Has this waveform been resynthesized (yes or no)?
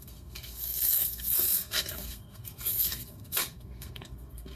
yes